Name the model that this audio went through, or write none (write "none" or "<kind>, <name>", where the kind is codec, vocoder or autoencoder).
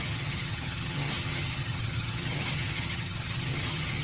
vocoder, HiFi-GAN